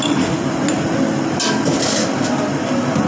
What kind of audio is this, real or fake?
real